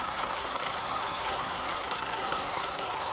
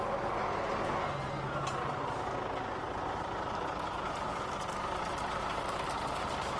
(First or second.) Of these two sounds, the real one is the second